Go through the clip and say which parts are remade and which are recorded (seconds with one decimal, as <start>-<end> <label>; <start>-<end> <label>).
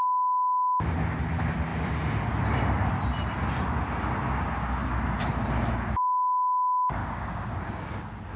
0.0-7.0 recorded; 7.0-7.9 remade; 7.9-8.4 recorded